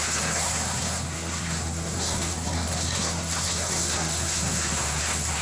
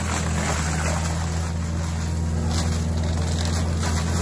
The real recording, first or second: second